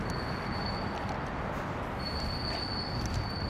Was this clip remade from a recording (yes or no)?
no